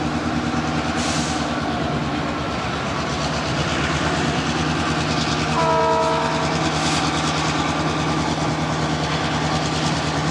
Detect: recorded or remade recorded